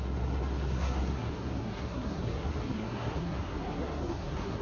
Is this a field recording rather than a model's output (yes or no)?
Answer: no